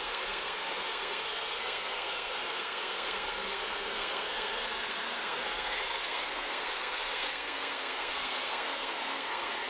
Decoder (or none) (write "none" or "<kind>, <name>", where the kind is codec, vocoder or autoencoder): codec, SNAC